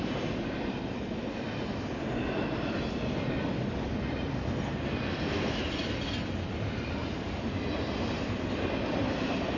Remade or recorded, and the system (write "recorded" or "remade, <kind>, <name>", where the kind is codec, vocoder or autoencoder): recorded